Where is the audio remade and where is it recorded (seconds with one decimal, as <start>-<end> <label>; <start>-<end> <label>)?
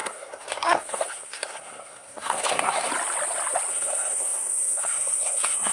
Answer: 0.0-2.9 remade; 2.9-3.7 recorded; 3.7-5.7 remade